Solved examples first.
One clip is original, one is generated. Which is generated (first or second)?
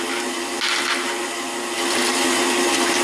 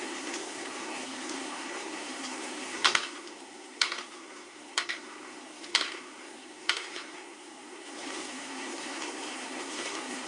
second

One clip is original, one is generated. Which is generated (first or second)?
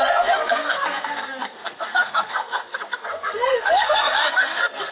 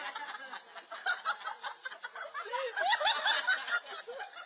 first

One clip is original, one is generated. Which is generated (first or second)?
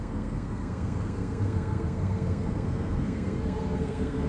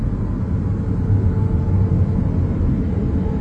first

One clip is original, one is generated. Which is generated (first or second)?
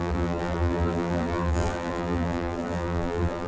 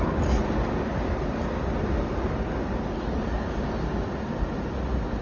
first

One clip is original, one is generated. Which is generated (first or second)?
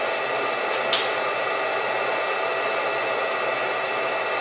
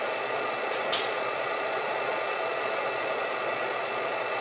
second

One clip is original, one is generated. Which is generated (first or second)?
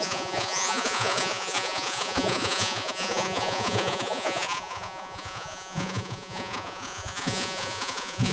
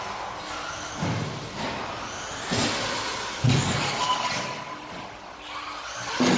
first